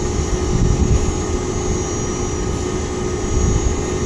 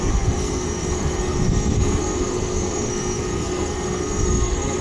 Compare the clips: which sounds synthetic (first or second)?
second